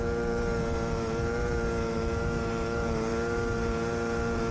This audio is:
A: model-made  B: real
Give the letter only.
A